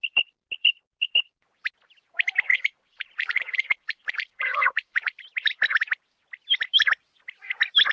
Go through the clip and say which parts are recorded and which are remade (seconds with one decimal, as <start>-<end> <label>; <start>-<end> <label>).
0.0-2.5 recorded; 2.5-5.2 remade; 5.2-7.9 recorded